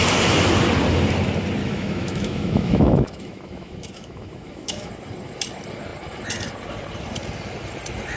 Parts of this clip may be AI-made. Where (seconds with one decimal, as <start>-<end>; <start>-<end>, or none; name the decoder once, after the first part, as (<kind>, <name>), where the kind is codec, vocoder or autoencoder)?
1.6-4.9 (autoencoder, DAC-VAE)